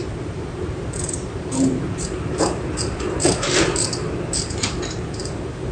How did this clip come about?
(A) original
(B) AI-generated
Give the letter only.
B